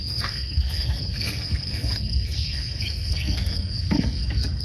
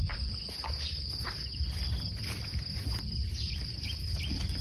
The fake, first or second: first